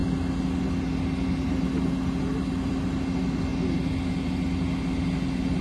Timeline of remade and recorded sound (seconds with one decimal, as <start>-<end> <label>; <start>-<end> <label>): 0.0-5.6 recorded